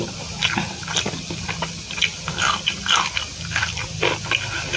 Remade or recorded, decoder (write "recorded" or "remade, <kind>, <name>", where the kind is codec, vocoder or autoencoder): recorded